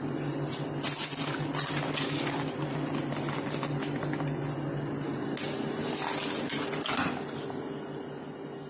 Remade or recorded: recorded